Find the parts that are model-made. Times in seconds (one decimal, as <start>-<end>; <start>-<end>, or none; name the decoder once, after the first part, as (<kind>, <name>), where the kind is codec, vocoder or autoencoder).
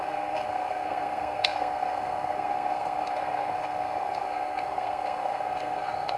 0.0-6.2 (codec, SNAC)